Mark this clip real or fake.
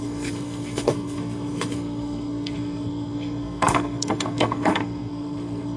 fake